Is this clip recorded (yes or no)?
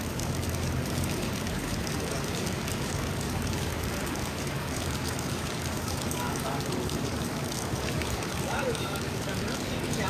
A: no